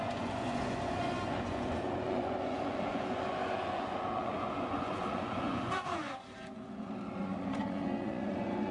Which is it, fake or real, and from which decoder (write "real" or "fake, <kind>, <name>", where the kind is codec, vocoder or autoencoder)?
fake, vocoder, Vocos